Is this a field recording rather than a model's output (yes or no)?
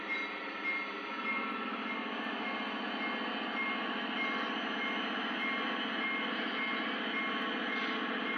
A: yes